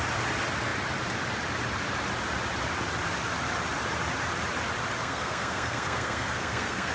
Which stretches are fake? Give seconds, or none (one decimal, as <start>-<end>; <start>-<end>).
5.0-6.9